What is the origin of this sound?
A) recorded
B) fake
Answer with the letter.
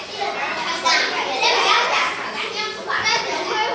A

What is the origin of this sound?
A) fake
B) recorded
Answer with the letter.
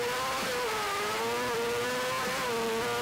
B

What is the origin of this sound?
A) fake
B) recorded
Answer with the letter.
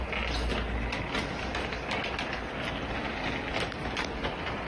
B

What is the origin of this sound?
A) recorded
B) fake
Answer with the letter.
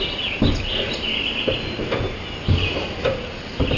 A